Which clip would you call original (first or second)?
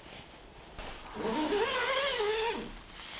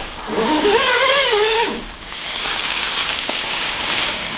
first